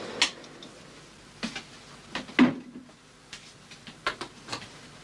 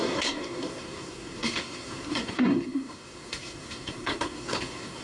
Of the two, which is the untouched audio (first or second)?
first